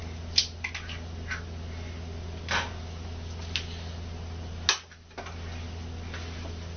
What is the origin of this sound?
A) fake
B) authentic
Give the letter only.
B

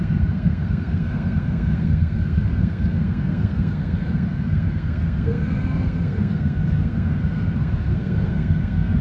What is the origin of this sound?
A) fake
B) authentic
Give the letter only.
A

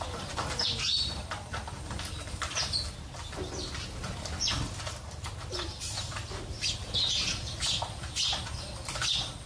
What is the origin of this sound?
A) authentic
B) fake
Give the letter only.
A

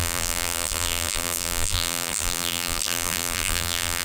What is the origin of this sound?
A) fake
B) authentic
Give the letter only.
A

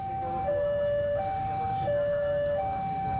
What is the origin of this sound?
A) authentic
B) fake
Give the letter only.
B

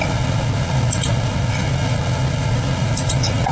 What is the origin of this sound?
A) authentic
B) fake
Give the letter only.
B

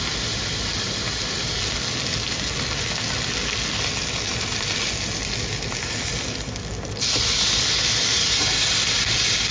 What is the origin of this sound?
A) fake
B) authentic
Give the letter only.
B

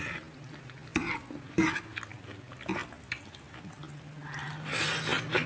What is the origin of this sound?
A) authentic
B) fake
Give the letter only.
A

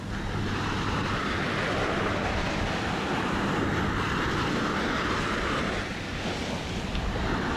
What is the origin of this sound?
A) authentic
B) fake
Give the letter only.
A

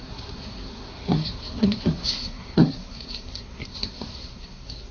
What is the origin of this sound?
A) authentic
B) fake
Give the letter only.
B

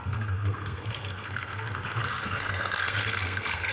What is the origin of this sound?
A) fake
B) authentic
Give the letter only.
A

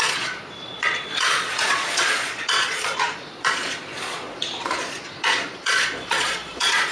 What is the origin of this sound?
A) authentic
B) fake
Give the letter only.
B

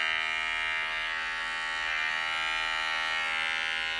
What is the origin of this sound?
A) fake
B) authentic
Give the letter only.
B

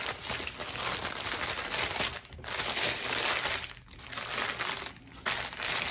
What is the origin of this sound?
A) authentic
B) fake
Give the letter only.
A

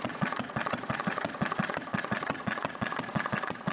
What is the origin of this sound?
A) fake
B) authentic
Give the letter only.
A